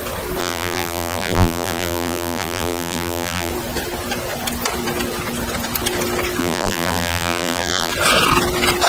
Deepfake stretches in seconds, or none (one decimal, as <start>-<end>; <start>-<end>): 0.4-3.5; 6.4-7.9